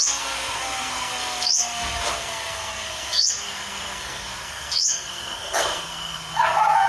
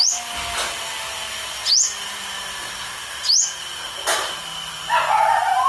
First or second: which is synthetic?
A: first